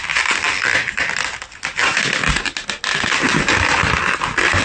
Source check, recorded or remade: recorded